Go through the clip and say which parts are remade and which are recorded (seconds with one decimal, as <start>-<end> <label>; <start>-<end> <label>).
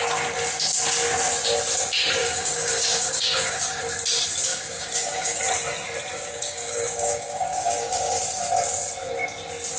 0.0-2.2 recorded; 2.2-3.8 remade; 3.8-4.5 recorded; 4.5-5.4 remade; 5.4-6.1 recorded; 6.1-8.2 remade; 8.2-9.8 recorded